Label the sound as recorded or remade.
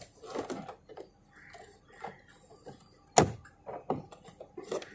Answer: recorded